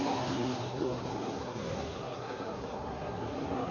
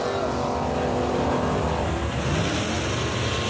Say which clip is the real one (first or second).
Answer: second